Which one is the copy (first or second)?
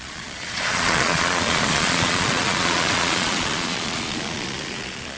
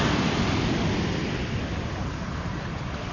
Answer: first